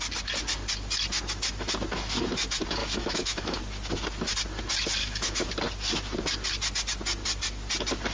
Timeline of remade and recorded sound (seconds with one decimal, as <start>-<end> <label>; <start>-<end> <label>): 0.0-2.8 recorded; 2.8-3.6 remade; 3.6-5.0 recorded; 5.0-5.5 remade; 5.5-8.1 recorded